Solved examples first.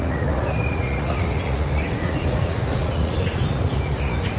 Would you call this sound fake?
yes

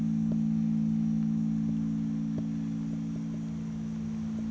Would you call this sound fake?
no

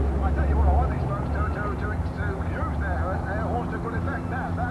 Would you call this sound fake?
no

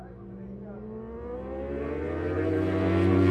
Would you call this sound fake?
no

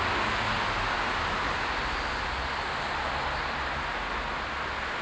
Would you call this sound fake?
no